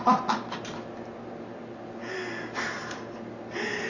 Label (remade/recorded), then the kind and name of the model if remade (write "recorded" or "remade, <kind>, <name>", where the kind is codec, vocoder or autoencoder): recorded